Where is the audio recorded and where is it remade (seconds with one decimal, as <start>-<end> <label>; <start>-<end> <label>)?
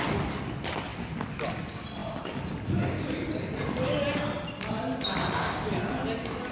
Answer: 0.0-6.5 recorded